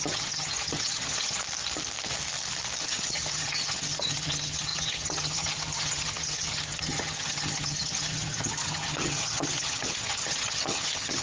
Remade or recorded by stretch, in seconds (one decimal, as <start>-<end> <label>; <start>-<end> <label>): 0.0-1.4 remade; 1.4-2.8 recorded; 2.8-11.2 remade

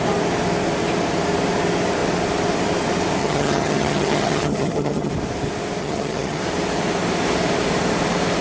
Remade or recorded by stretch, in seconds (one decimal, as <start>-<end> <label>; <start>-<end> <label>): 0.0-3.2 recorded; 3.2-5.1 remade; 5.1-5.8 recorded; 5.8-6.4 remade; 6.4-8.4 recorded

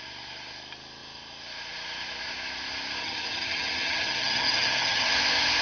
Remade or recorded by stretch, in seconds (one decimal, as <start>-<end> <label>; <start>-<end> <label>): 0.0-3.0 recorded; 3.0-5.1 remade; 5.1-5.6 recorded

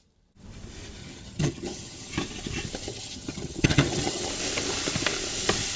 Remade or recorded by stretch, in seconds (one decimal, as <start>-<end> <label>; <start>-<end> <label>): 0.0-1.0 recorded; 1.0-2.1 remade; 2.1-2.9 recorded; 2.9-4.3 remade; 4.3-5.8 recorded

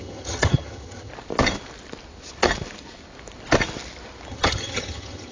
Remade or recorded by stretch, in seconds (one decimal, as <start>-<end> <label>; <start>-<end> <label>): 0.0-1.1 remade; 1.1-4.3 recorded; 4.3-5.3 remade

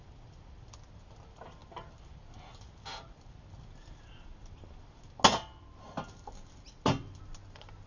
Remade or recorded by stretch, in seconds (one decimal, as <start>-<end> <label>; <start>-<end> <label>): 0.0-7.9 recorded

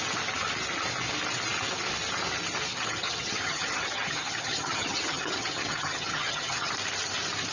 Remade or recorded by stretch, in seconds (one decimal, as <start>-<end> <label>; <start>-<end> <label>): 0.0-2.7 recorded; 2.7-6.7 remade; 6.7-7.5 recorded